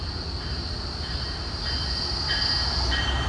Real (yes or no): yes